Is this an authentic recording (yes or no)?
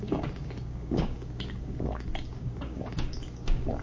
no